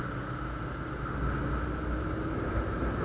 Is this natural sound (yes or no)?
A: yes